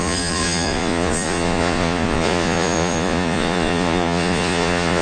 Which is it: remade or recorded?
remade